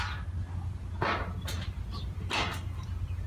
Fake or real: real